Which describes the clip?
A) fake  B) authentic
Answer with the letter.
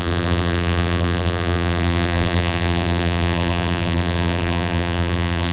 A